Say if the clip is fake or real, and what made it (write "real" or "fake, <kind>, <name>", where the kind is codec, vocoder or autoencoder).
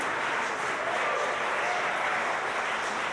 real